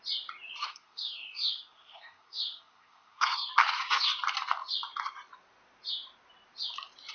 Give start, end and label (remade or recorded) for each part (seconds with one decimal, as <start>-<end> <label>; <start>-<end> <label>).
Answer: 0.0-0.6 recorded; 0.6-3.5 remade; 3.5-7.1 recorded

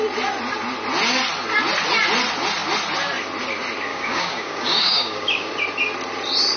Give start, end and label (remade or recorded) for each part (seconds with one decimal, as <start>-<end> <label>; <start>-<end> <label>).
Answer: 0.0-3.9 recorded; 3.9-5.5 remade; 5.5-6.6 recorded

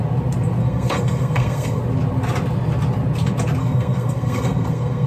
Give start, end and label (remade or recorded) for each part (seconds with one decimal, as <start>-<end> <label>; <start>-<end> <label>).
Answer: 0.0-0.6 recorded; 0.6-1.8 remade; 1.8-3.6 recorded; 3.6-5.1 remade

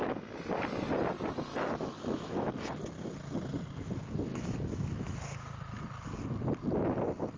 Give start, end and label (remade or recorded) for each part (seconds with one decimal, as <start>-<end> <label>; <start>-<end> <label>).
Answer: 0.0-1.5 recorded; 1.5-2.5 remade; 2.5-4.3 recorded; 4.3-5.2 remade; 5.2-7.4 recorded